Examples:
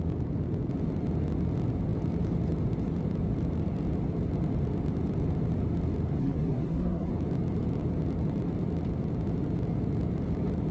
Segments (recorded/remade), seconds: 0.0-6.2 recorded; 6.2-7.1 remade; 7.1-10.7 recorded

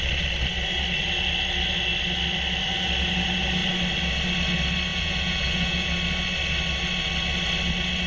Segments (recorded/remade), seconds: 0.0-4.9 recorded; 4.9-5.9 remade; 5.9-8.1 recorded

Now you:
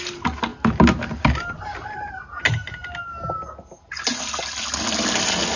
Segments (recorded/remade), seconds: 0.0-5.6 recorded